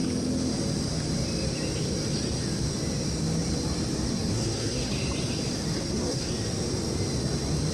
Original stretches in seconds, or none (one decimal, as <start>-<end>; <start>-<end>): 0.0-4.1; 4.9-5.7; 6.3-7.7